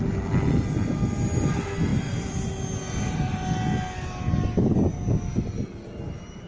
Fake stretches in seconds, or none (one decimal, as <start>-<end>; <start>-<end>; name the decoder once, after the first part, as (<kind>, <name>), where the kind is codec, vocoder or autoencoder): none